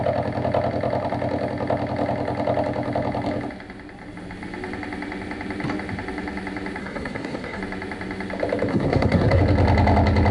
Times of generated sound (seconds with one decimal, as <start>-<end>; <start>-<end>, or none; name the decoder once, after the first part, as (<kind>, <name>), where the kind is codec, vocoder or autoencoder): 6.8-7.6 (codec, SNAC); 8.7-9.4

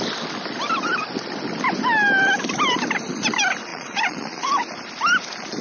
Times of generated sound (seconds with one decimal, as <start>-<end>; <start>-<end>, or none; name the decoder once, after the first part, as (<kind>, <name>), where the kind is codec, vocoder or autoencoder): 3.7-4.6 (vocoder, Vocos)

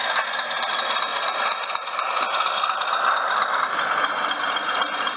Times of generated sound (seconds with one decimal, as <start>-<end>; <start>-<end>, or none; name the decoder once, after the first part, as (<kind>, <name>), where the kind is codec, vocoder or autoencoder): none

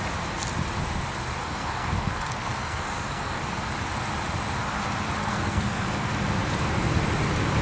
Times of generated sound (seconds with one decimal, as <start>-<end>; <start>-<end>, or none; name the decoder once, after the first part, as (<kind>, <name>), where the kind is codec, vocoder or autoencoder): 1.4-3.4 (codec, SNAC); 5.2-6.1